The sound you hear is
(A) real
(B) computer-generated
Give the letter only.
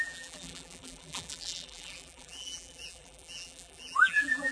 B